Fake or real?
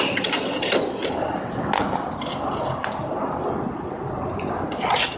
real